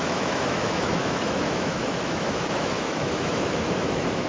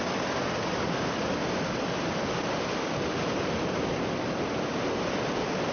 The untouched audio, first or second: second